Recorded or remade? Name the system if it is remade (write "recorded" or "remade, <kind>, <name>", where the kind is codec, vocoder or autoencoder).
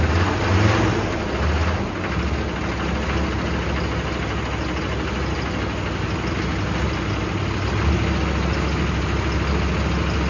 recorded